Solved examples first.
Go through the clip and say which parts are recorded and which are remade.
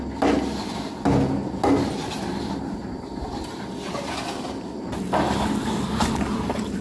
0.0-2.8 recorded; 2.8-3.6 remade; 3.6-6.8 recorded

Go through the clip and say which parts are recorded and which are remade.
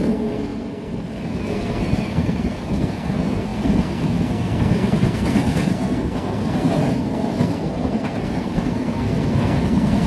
0.0-10.1 remade